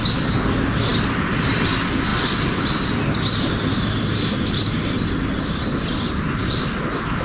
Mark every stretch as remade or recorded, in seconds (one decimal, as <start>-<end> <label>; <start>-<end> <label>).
0.0-7.2 recorded